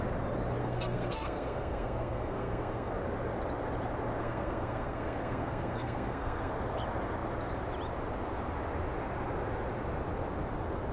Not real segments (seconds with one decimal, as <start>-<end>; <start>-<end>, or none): 0.6-2.9; 4.2-6.5